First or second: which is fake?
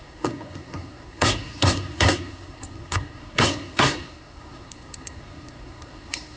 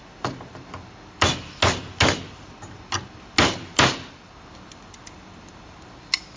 first